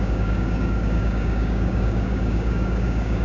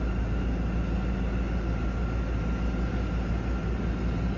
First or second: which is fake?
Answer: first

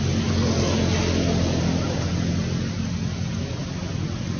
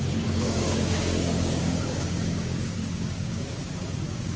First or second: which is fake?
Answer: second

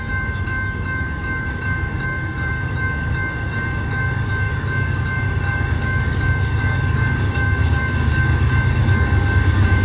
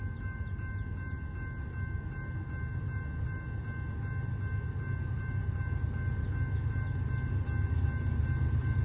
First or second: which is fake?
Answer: first